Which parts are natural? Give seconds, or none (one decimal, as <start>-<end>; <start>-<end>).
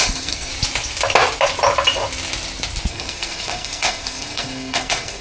0.5-2.9